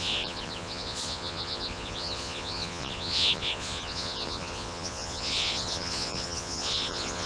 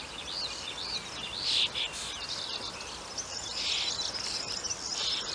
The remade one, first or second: first